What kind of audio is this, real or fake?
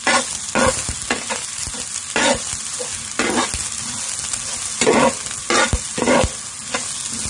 real